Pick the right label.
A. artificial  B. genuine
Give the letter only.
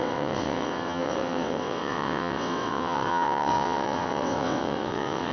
A